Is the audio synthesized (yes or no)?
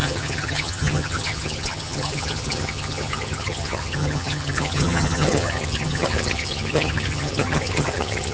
yes